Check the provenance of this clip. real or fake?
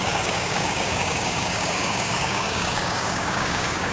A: fake